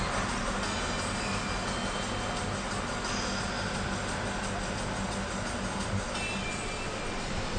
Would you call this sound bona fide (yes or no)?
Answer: yes